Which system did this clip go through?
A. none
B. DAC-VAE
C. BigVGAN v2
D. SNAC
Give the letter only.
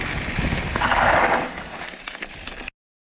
A